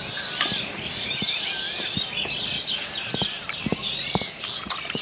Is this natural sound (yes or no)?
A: yes